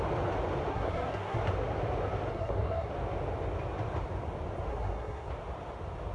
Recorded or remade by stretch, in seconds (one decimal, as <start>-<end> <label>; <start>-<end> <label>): 0.0-0.7 recorded; 0.7-1.4 remade; 1.4-2.3 recorded; 2.3-2.9 remade; 2.9-4.7 recorded; 4.7-5.3 remade; 5.3-6.1 recorded